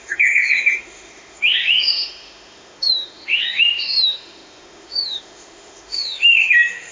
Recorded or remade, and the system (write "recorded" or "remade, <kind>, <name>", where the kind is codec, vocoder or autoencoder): remade, autoencoder, DAC-VAE